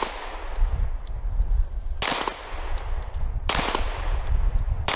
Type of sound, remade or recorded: recorded